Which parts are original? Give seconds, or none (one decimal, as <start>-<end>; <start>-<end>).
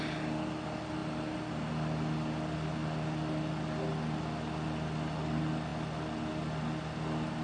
0.0-7.4